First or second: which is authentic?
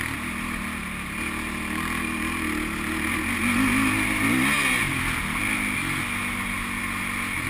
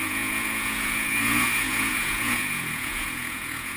first